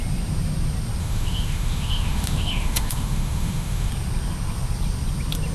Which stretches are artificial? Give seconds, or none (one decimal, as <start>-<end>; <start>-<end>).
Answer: 1.0-3.9